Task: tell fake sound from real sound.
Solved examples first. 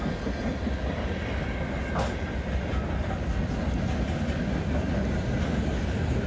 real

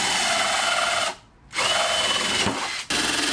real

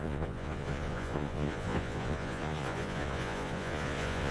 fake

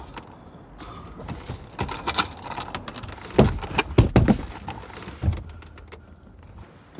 real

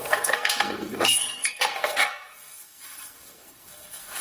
fake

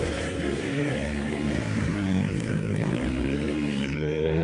fake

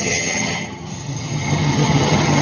fake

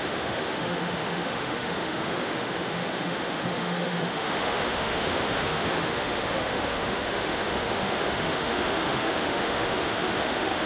fake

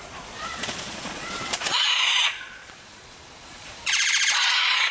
fake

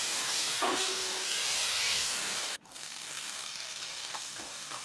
fake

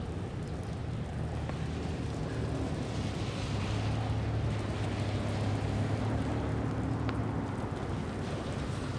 real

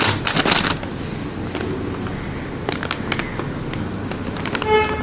real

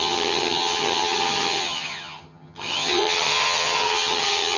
fake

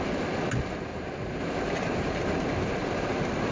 real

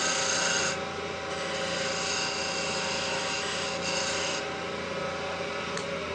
real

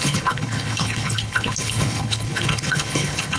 fake